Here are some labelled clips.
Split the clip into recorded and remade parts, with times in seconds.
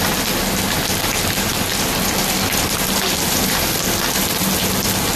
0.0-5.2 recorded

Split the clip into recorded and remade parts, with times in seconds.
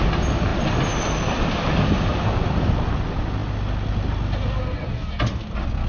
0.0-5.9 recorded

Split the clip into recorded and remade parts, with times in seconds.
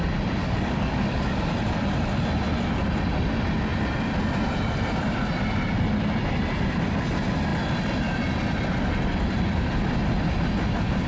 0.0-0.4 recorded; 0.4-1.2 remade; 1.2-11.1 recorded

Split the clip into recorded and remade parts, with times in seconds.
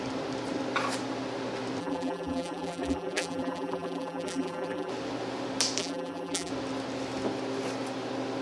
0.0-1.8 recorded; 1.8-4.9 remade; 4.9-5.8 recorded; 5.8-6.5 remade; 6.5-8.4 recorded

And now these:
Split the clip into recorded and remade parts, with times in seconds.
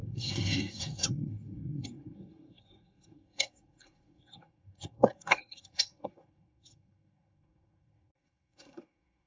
0.0-9.3 remade